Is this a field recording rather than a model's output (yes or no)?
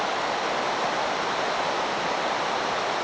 yes